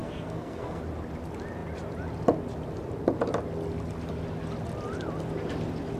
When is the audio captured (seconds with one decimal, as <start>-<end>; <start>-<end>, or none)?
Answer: 0.8-6.0